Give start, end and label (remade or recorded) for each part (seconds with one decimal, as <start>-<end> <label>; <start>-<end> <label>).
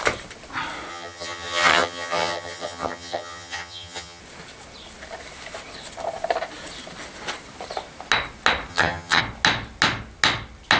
0.0-0.9 recorded; 0.9-4.2 remade; 4.2-8.7 recorded; 8.7-9.2 remade; 9.2-10.8 recorded